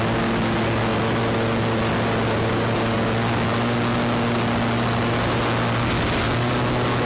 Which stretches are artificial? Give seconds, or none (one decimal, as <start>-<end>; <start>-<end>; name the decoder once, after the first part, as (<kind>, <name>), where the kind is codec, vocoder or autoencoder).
none